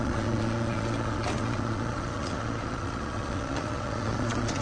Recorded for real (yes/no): no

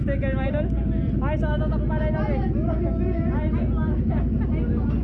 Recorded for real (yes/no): yes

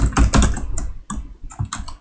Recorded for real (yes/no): yes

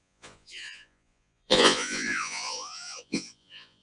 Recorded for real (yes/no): no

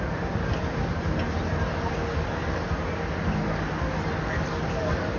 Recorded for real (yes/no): yes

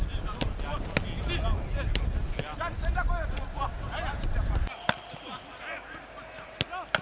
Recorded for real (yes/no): yes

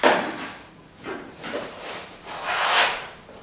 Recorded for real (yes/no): yes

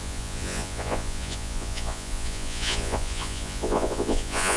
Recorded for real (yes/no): no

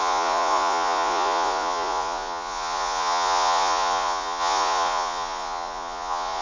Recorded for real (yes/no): no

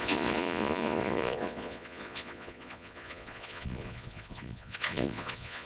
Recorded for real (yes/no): no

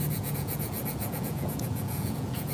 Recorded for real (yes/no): no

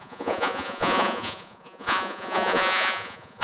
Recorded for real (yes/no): no